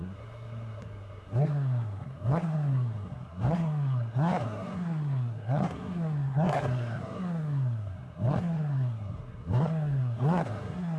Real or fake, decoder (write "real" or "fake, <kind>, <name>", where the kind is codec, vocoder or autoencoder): fake, codec, SNAC